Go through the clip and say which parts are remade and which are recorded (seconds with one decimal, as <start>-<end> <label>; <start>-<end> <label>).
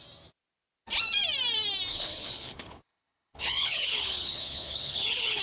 0.0-1.9 recorded; 1.9-5.4 remade